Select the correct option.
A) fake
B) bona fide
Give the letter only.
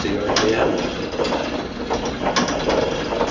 B